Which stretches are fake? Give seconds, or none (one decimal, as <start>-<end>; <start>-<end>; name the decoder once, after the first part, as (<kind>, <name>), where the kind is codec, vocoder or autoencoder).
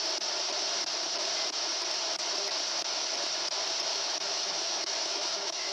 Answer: 3.9-5.7 (autoencoder, DAC-VAE)